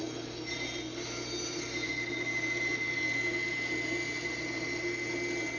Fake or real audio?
real